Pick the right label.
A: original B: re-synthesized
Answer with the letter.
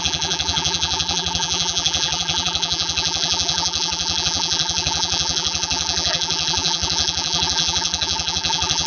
B